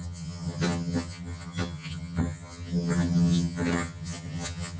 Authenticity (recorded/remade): remade